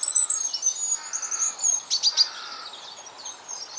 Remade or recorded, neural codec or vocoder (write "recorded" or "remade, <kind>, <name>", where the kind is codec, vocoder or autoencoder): recorded